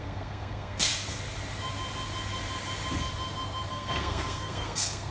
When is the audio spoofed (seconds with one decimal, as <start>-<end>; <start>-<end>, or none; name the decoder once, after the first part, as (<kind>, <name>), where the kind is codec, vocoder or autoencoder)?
0.0-0.9 (codec, SNAC); 3.7-5.1